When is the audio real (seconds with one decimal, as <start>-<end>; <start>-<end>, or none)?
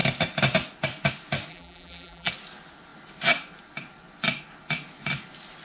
0.0-1.5; 2.3-5.6